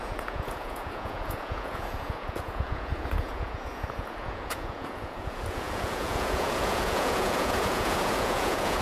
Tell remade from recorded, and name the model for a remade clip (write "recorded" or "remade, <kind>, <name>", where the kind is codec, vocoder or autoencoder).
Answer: remade, vocoder, Vocos